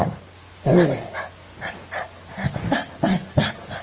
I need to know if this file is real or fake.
real